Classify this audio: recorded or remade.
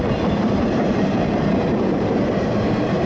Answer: remade